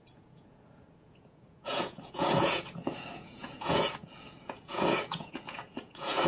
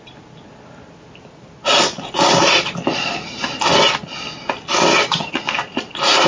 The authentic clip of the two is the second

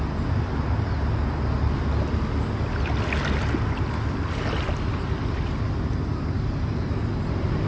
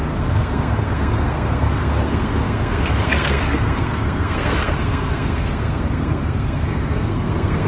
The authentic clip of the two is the first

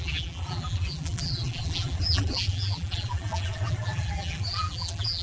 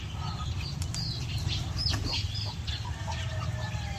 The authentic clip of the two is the second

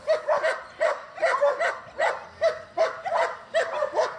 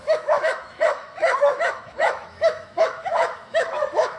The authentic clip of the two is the first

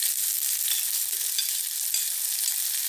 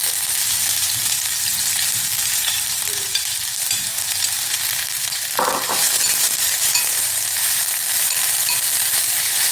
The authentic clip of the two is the first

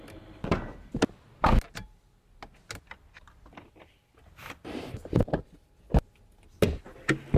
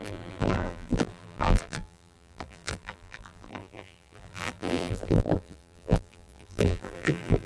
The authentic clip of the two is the first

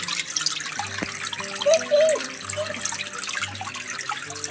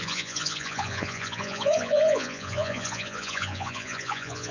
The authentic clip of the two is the first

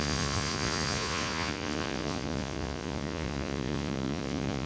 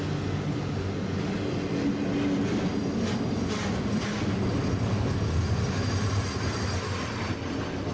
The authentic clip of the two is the second